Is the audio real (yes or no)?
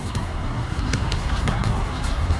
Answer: no